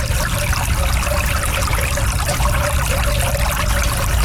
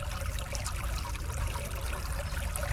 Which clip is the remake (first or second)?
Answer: second